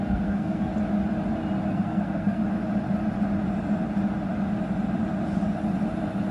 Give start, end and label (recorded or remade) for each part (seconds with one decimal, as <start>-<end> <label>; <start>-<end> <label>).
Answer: 0.0-0.7 remade; 0.7-1.7 recorded; 1.7-2.4 remade; 2.4-6.3 recorded